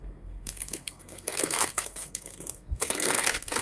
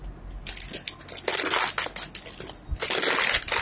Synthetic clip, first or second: first